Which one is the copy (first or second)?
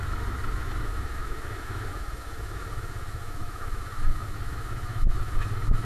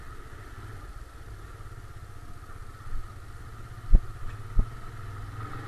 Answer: first